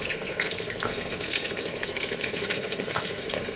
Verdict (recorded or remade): remade